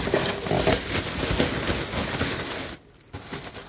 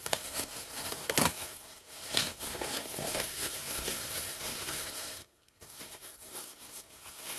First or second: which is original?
first